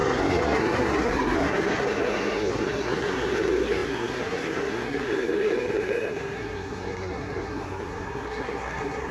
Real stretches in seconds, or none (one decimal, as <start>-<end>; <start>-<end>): none